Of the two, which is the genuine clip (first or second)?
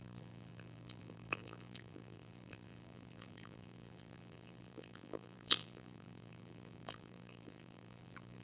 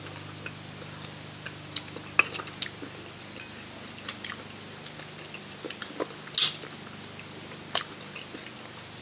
second